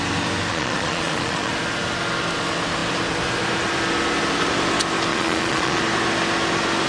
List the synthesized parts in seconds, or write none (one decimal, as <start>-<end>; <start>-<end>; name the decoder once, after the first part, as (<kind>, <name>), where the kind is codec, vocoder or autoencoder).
0.5-1.5 (vocoder, Vocos); 5.1-5.8